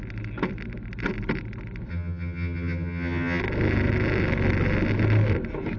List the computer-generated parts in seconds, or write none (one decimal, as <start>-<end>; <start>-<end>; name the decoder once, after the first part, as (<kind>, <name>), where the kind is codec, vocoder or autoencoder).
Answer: 1.9-3.4 (vocoder, HiFi-GAN)

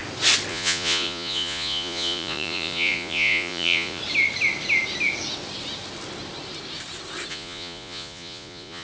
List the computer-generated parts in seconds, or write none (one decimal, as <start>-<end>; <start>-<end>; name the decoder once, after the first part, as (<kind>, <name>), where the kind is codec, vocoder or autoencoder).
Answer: 0.5-4.0 (vocoder, Vocos); 7.3-8.8

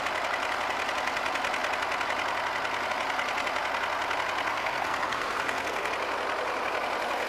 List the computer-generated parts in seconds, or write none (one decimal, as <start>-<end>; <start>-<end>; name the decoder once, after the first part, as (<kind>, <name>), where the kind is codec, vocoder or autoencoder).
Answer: 4.5-5.9 (codec, SNAC)

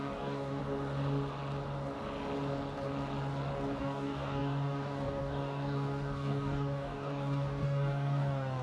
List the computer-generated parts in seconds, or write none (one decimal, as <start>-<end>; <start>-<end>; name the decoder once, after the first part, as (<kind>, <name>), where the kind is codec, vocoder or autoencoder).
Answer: 0.0-0.6 (codec, DAC); 3.8-8.6